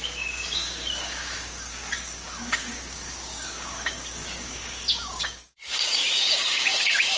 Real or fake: fake